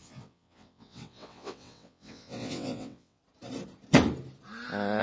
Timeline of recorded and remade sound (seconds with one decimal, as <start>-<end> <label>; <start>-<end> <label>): 0.0-3.2 remade; 3.2-5.0 recorded

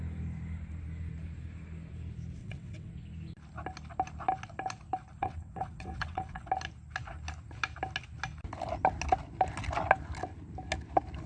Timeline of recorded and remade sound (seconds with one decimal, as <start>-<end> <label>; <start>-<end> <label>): 0.0-2.4 recorded; 2.4-2.9 remade; 2.9-5.2 recorded; 5.2-6.5 remade; 6.5-11.3 recorded

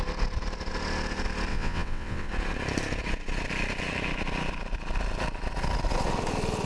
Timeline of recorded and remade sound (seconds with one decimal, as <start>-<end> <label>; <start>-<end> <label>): 0.0-1.5 recorded; 1.5-2.3 remade; 2.3-6.7 recorded

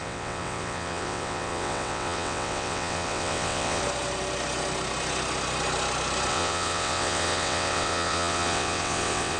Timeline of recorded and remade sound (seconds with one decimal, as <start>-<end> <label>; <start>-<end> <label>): 0.0-3.8 remade; 3.8-6.3 recorded; 6.3-9.4 remade

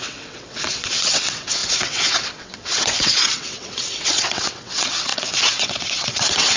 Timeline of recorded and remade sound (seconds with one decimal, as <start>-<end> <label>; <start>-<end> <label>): 0.0-6.6 remade

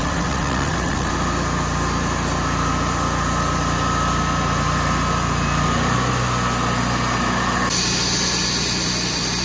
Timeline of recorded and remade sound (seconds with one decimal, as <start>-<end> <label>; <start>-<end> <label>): 0.0-1.1 remade; 1.1-9.4 recorded

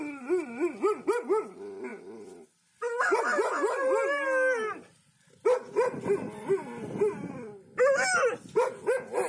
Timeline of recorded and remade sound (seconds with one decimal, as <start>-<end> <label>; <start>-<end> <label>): 0.0-9.3 recorded